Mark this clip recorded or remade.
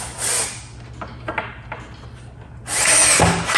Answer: recorded